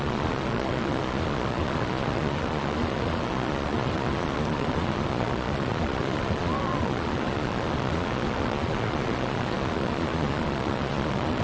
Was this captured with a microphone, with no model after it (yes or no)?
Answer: no